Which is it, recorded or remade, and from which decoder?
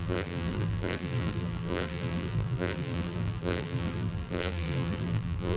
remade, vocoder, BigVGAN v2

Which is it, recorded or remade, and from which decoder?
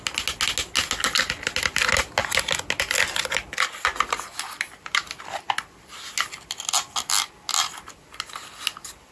recorded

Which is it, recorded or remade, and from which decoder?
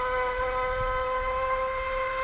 recorded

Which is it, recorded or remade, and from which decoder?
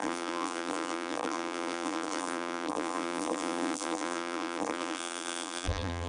remade, vocoder, BigVGAN v2